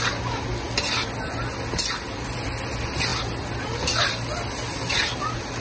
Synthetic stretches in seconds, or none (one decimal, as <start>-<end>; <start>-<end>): none